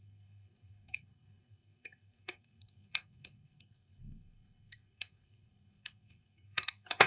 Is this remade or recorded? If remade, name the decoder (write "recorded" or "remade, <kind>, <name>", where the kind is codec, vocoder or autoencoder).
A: remade, codec, SNAC